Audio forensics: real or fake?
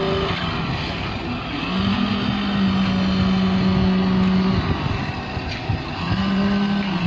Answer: real